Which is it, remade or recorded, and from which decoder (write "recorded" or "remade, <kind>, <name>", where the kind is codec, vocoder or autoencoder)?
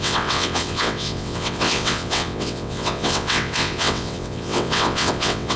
remade, vocoder, WaveNeXt